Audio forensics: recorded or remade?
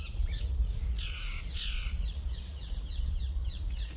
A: remade